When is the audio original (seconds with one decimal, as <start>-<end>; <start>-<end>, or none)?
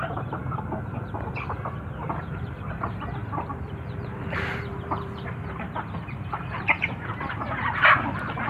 0.4-1.8